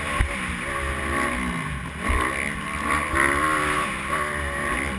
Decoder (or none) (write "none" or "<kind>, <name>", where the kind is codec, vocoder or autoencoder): none